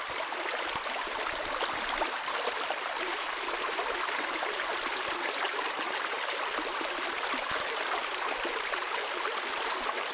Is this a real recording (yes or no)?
yes